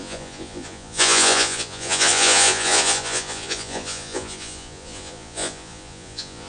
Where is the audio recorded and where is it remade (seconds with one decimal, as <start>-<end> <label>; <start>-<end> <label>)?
0.0-6.5 remade